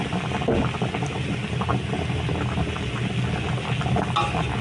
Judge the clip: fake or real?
real